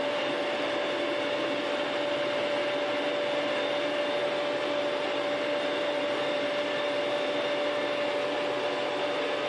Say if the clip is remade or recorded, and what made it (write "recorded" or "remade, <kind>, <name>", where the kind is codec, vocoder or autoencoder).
recorded